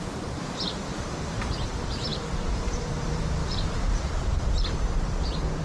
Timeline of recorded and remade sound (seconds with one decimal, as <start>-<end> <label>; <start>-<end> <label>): 0.0-3.4 remade; 3.4-5.6 recorded